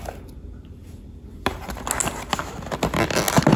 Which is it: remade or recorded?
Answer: recorded